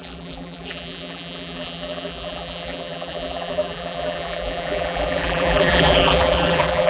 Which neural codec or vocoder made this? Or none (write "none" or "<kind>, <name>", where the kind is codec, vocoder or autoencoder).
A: vocoder, BigVGAN v2